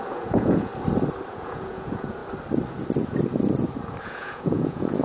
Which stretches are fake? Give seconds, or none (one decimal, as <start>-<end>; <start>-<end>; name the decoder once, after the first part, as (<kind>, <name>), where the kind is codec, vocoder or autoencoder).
0.0-0.7 (vocoder, Vocos); 1.3-2.2; 4.0-5.0